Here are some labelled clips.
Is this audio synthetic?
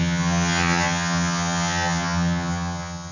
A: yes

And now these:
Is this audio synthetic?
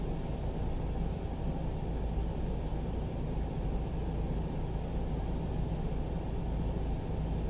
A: no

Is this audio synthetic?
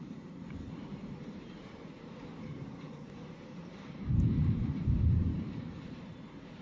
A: yes